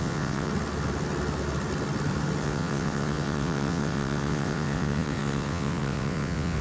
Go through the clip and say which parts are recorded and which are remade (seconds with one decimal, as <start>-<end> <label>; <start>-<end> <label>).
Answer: 0.0-0.5 remade; 0.5-2.4 recorded; 2.4-6.6 remade